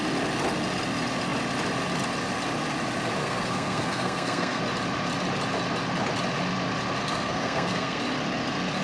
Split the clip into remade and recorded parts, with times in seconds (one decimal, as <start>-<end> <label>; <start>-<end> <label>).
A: 0.0-3.2 recorded; 3.2-4.6 remade; 4.6-7.0 recorded; 7.0-8.0 remade; 8.0-8.8 recorded